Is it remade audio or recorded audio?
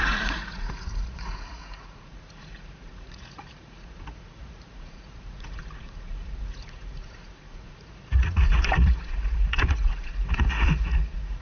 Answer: remade